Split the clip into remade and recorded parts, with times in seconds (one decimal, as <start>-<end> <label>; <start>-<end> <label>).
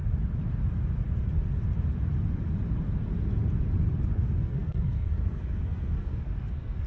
0.0-4.1 recorded; 4.1-6.9 remade